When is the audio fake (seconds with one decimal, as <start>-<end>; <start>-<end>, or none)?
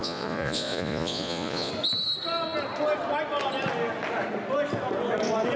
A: 0.0-1.7